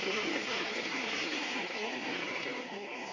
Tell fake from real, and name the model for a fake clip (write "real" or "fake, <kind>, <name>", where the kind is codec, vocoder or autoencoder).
fake, codec, SNAC